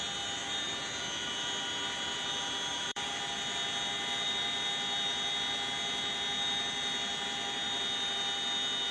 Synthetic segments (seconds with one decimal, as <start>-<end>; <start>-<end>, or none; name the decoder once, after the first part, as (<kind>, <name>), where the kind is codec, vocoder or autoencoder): 2.7-3.2 (vocoder, BigVGAN v2)